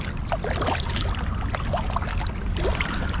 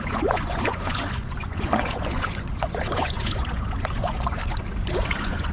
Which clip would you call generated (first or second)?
second